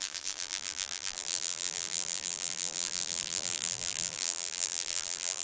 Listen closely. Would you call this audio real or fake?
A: fake